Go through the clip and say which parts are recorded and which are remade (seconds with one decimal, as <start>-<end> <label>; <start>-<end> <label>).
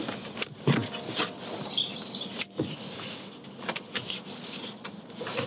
0.0-5.5 recorded